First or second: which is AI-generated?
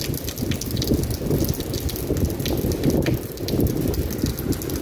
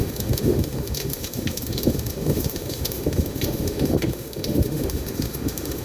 second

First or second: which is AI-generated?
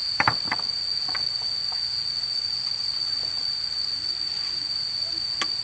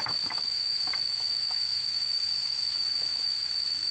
second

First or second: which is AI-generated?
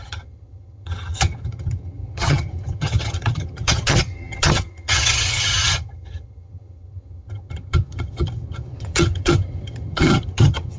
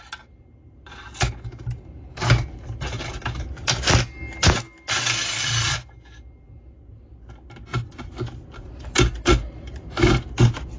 first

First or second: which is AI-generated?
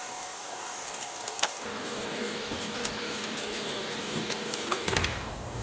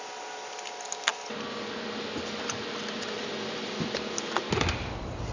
first